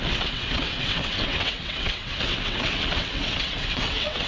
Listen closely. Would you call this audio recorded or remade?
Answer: remade